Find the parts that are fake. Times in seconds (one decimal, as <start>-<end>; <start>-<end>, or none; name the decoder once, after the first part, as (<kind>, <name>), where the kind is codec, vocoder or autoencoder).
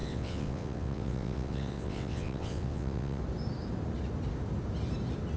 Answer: 0.0-3.2 (vocoder, WaveNeXt)